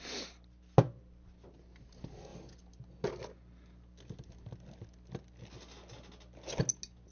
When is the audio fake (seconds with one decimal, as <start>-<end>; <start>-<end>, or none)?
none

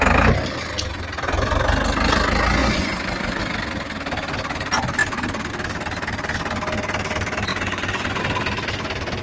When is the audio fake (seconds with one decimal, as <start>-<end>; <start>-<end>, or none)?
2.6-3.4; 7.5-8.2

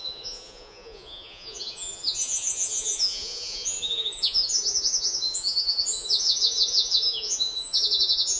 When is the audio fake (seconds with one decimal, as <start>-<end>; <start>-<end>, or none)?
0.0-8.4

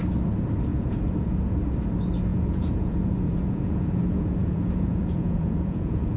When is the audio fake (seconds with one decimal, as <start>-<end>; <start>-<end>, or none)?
0.7-1.5; 2.3-6.2

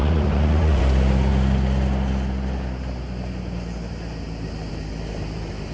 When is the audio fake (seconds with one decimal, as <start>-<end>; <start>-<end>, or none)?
0.0-0.8

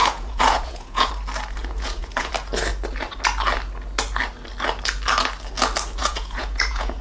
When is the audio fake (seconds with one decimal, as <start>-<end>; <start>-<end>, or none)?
0.0-1.1; 1.6-2.3; 6.0-7.0

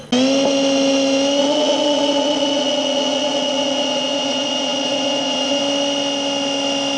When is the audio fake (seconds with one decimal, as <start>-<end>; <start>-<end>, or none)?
1.4-5.6

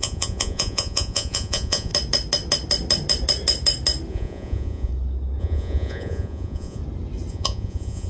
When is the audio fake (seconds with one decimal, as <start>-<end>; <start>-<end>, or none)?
0.0-1.9; 4.1-4.9; 5.4-6.8; 7.3-8.1